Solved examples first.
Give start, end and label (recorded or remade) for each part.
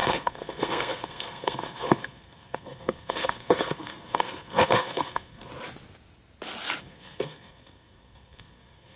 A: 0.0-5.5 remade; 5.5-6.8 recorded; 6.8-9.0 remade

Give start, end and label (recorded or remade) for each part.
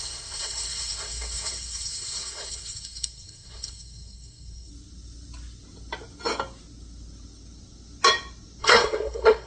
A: 0.0-4.7 remade; 4.7-8.6 recorded; 8.6-9.5 remade